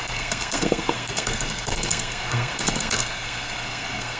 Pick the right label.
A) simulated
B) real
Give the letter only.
A